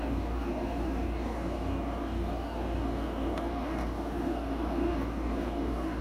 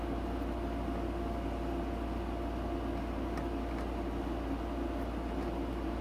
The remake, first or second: first